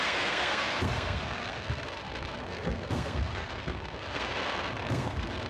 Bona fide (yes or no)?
no